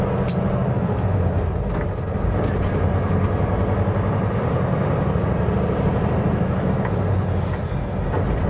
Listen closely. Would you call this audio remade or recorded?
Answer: recorded